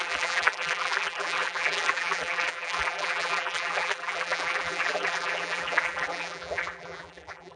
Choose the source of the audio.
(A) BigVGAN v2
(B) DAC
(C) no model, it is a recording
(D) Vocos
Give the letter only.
A